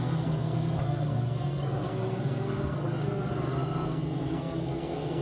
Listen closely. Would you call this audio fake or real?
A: fake